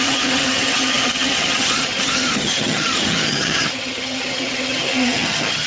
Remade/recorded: remade